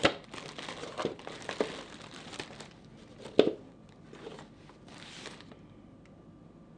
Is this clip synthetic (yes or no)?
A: no